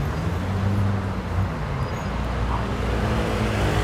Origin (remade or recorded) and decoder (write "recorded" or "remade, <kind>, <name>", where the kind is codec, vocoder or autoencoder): recorded